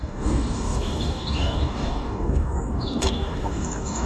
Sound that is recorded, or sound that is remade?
remade